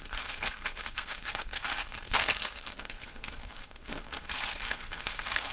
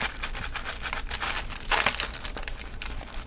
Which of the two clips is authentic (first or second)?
second